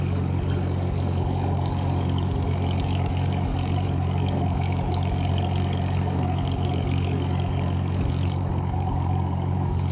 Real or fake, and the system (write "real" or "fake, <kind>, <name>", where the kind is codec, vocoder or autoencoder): fake, codec, DAC